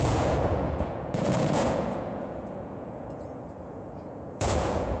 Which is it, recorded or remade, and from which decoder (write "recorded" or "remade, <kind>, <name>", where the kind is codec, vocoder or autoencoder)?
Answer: remade, vocoder, Vocos